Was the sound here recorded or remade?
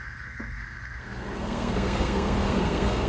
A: remade